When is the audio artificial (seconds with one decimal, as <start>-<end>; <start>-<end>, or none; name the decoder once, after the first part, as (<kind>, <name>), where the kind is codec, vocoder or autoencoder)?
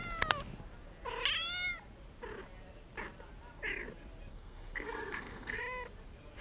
4.3-5.6 (codec, SNAC)